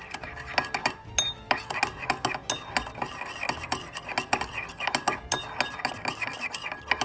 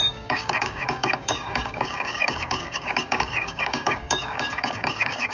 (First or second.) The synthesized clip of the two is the second